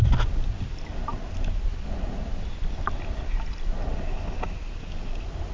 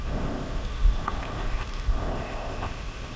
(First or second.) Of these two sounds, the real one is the first